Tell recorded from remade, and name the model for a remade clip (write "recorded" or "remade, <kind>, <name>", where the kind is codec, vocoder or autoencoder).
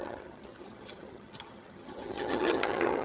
remade, vocoder, HiFi-GAN